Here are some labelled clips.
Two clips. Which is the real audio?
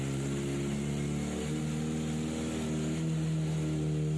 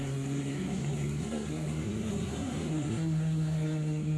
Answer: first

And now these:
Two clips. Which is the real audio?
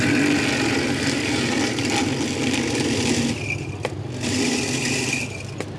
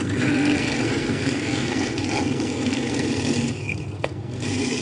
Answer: first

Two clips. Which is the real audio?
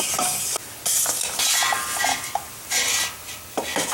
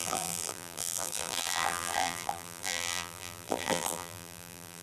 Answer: first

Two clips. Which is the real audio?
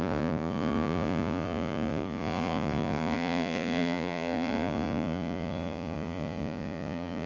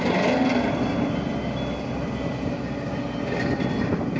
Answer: second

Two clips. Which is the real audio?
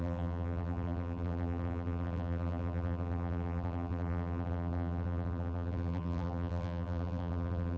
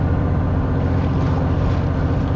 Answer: second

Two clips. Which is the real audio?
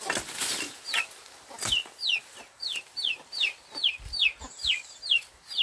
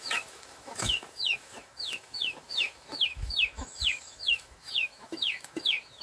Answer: first